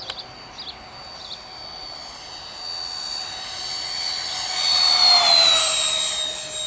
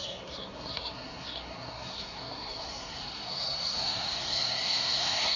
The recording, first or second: first